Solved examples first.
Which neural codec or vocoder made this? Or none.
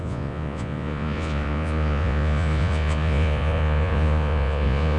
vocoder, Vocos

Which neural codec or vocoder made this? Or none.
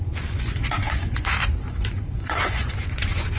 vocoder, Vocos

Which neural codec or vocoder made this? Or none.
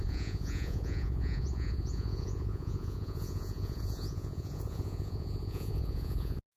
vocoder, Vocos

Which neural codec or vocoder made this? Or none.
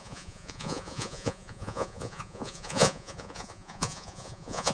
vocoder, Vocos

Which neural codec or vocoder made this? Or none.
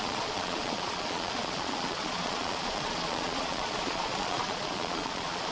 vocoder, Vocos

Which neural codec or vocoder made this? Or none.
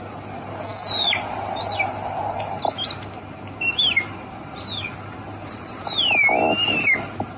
none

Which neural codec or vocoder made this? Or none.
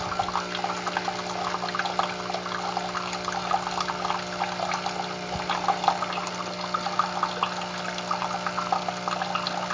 none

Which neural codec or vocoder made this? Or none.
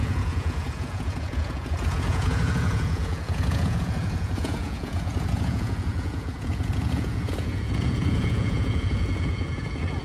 vocoder, Vocos